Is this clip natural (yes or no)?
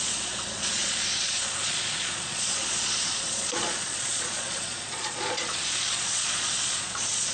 no